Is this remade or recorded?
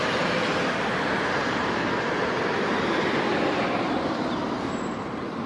remade